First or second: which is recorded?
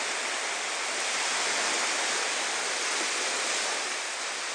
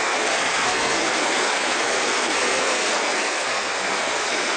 first